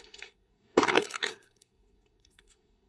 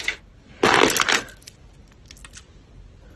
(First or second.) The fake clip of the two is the first